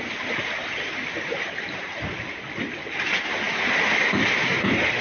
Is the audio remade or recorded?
recorded